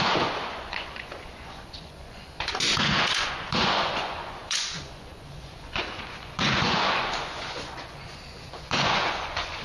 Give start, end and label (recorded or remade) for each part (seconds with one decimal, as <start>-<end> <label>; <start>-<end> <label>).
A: 0.0-9.6 remade